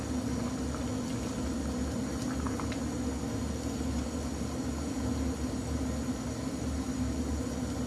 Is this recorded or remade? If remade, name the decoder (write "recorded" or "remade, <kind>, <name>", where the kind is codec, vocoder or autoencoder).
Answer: recorded